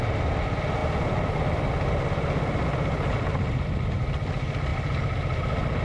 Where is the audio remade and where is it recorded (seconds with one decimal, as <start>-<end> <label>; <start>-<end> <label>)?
0.0-5.8 recorded